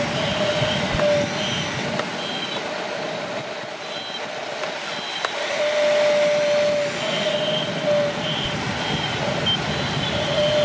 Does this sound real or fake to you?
real